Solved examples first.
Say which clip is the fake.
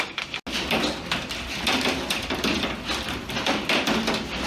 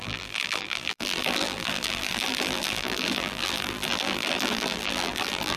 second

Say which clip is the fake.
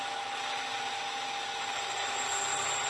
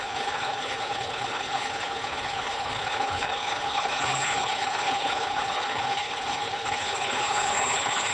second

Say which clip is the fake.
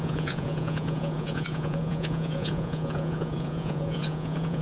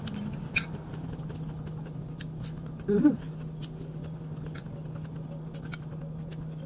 first